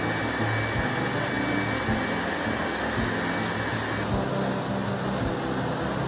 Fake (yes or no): no